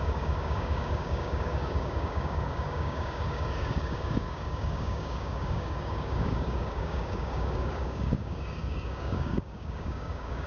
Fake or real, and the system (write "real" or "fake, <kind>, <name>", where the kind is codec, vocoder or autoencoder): fake, codec, DAC